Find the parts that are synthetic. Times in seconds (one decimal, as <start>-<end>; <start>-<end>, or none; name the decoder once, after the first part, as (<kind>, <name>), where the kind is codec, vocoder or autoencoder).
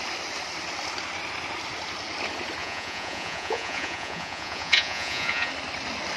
2.6-5.5 (vocoder, Vocos)